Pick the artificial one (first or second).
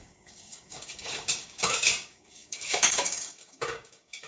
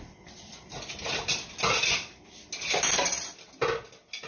first